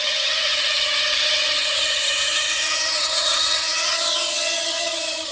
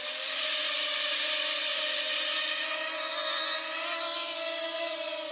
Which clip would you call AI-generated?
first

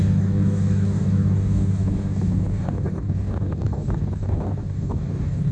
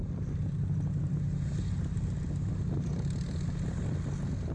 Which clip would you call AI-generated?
first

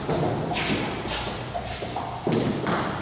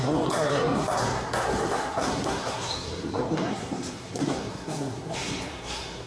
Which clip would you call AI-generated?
second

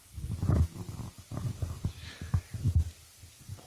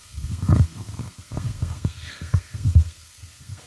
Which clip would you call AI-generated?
second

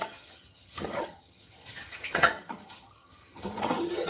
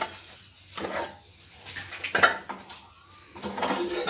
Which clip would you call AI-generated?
first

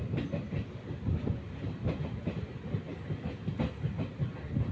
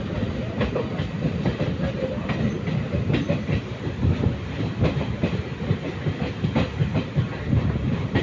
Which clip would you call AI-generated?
second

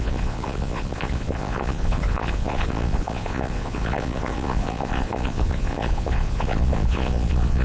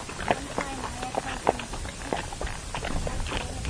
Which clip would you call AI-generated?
first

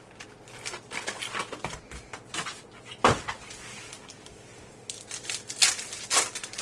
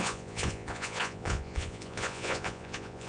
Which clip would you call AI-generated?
second